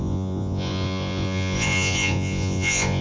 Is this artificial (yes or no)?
yes